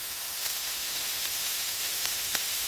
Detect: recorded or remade remade